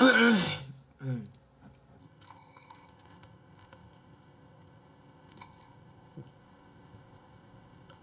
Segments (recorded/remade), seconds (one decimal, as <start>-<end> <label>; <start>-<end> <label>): 0.0-0.6 remade; 0.6-2.0 recorded; 2.0-8.0 remade